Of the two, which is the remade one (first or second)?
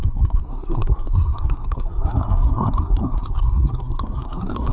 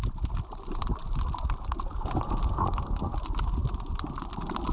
first